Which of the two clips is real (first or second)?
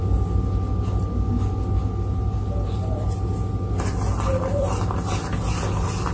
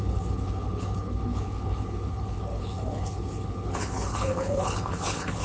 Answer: first